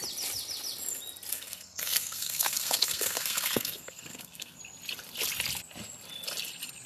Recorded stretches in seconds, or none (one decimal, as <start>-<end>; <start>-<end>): 0.0-1.3; 4.6-6.9